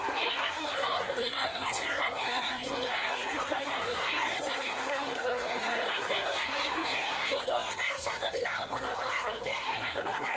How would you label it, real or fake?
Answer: fake